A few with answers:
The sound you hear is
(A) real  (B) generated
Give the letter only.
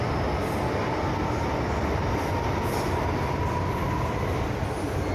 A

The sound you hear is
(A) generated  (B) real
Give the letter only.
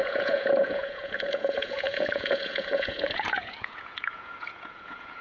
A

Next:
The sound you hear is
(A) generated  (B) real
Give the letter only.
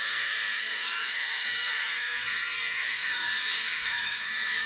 A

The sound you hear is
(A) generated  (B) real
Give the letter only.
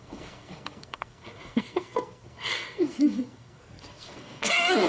A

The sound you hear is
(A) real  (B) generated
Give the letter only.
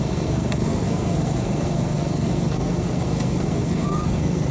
B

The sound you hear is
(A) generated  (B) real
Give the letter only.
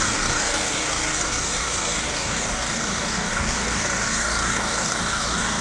A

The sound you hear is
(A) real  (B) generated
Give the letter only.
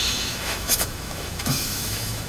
B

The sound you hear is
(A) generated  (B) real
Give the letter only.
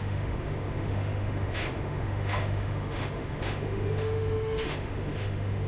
A